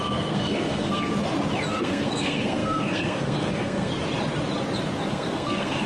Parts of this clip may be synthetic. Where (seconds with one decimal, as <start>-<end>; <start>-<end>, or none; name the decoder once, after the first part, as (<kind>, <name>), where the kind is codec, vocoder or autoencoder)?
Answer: 0.0-1.1 (codec, SNAC); 1.7-3.9; 5.1-5.9